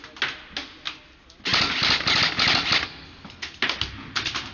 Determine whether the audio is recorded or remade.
recorded